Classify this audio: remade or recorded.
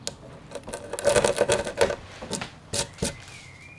recorded